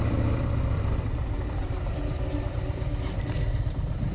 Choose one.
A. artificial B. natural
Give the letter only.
A